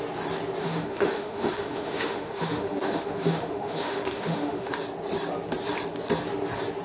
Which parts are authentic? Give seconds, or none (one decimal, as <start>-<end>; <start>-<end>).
0.0-0.6; 4.7-6.8